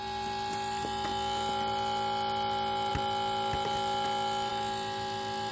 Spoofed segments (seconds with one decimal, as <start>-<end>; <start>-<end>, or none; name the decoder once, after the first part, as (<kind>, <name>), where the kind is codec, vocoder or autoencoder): none